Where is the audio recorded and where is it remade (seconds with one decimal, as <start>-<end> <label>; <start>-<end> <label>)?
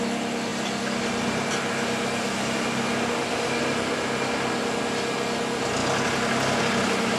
0.0-7.2 recorded